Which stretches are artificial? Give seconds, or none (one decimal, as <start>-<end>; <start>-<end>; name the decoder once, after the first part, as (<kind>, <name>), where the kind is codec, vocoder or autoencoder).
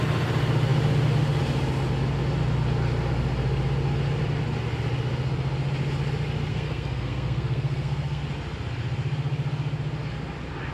6.5-8.2 (codec, SNAC)